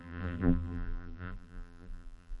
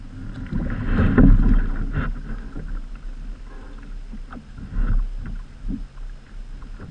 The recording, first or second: second